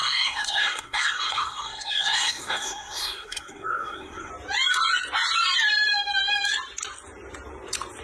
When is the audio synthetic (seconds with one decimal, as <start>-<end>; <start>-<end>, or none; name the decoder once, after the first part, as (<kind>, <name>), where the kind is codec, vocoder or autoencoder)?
0.0-4.3 (codec, SNAC)

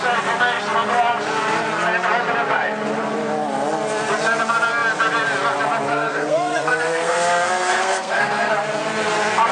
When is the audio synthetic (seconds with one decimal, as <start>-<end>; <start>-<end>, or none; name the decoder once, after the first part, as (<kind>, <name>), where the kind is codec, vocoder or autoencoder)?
5.9-8.5 (codec, SNAC)

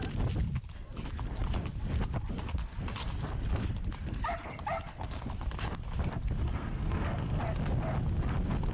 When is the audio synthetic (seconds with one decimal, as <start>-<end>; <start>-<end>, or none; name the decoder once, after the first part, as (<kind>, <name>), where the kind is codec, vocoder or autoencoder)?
6.4-7.4 (codec, SNAC)

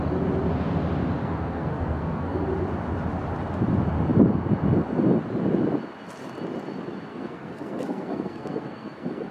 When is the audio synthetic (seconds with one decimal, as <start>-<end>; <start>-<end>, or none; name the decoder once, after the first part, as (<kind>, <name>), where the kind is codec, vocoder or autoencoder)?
1.2-2.4 (codec, SNAC); 7.1-9.3

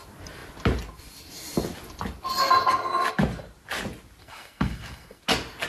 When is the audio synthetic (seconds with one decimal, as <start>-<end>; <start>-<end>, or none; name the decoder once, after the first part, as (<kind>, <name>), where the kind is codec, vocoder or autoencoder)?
4.2-5.2 (codec, SNAC)

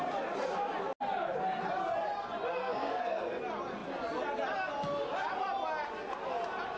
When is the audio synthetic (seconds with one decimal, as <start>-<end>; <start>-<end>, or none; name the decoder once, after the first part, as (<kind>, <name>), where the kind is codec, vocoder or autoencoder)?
2.6-3.4 (codec, SNAC)

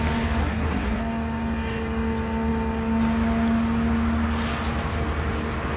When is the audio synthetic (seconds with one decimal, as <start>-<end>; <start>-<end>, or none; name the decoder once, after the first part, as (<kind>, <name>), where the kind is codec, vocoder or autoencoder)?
0.4-1.0 (codec, SNAC)